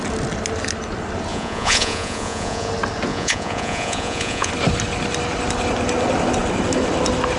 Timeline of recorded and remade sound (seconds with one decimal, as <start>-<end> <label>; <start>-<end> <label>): 0.0-1.3 recorded; 1.3-2.7 remade; 2.7-3.1 recorded; 3.1-4.5 remade; 4.5-7.4 recorded

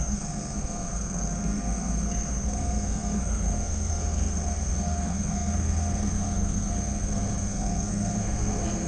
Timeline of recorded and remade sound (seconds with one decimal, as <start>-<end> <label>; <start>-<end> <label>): 0.0-8.9 remade

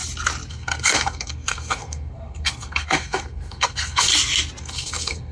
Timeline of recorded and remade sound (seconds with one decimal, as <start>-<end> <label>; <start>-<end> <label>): 0.0-0.5 recorded; 0.5-4.1 remade; 4.1-4.6 recorded; 4.6-5.3 remade

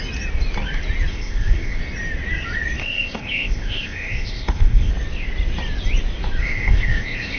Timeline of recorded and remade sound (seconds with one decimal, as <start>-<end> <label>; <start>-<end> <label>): 0.0-1.1 recorded; 1.1-1.8 remade; 1.8-2.8 recorded; 2.8-4.9 remade; 4.9-6.4 recorded; 6.4-7.4 remade